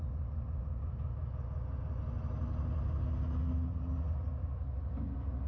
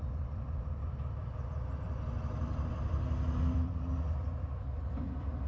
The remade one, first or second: second